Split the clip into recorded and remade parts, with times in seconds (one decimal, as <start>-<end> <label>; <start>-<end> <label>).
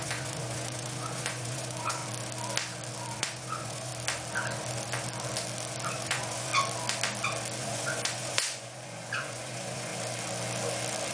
0.0-2.0 remade; 2.0-3.2 recorded; 3.2-3.9 remade; 3.9-5.9 recorded; 5.9-6.5 remade; 6.5-7.6 recorded; 7.6-9.9 remade; 9.9-11.1 recorded